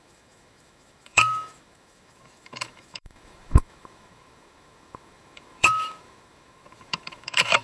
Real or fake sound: fake